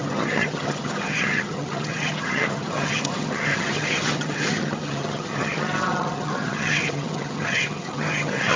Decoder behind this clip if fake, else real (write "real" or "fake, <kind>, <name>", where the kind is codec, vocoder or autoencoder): fake, vocoder, HiFi-GAN